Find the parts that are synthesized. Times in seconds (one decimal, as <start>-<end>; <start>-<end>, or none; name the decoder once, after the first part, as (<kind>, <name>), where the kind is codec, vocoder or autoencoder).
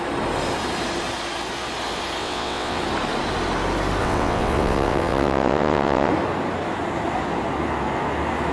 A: 2.2-2.8 (vocoder, WaveNeXt); 4.0-6.1